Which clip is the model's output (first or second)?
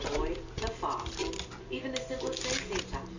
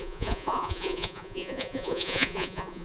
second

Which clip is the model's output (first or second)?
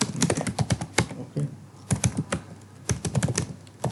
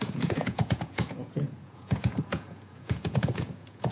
second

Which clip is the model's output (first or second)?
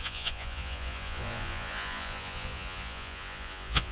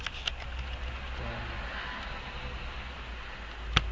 first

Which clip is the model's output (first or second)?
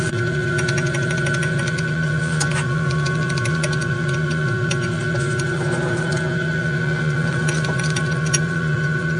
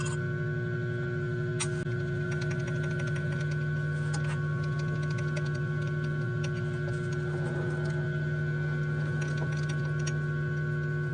first